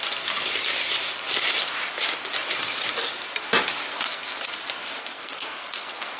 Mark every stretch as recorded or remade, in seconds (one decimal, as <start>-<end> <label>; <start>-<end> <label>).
0.0-3.9 recorded; 3.9-4.4 remade; 4.4-5.0 recorded; 5.0-6.2 remade